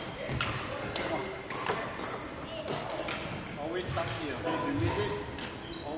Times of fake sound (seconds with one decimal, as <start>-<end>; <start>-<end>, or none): none